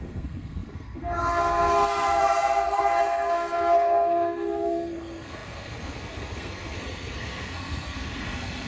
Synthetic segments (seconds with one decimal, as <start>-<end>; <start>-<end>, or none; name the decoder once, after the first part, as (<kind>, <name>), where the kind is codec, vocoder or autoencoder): 0.0-8.7 (codec, SNAC)